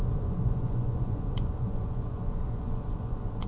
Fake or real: fake